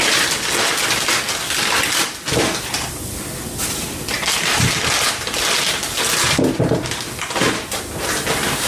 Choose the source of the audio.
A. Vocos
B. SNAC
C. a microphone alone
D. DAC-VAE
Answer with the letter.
C